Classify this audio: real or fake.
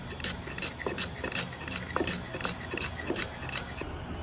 real